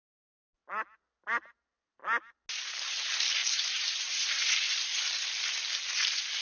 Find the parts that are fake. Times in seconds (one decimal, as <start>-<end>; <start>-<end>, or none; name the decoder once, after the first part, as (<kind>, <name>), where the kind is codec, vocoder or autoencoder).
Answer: none